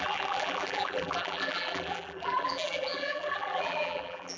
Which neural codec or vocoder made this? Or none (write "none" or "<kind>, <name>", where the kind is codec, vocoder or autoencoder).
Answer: vocoder, BigVGAN v2